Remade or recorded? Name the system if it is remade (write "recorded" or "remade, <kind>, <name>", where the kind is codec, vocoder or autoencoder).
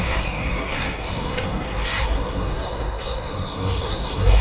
remade, codec, SNAC